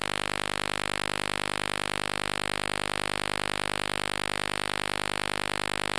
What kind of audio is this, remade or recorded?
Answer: recorded